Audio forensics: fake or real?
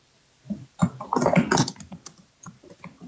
real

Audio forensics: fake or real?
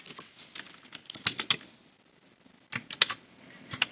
real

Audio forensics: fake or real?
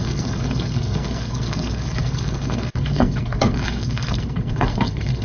fake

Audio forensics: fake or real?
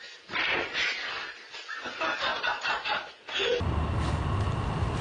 real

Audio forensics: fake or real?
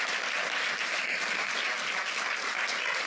real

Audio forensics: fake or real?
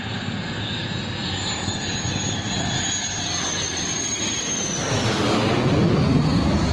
real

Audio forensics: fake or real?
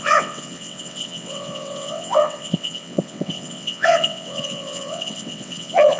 fake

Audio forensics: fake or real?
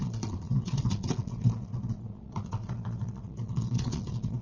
fake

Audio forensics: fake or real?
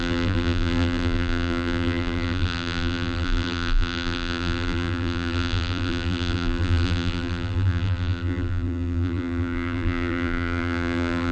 fake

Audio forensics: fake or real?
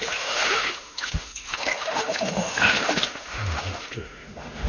fake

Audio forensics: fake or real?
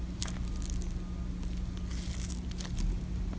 real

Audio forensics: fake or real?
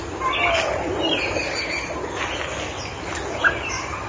real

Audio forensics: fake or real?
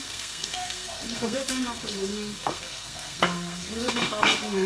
fake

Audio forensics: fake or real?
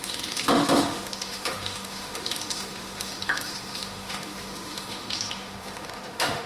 fake